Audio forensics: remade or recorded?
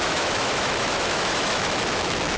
remade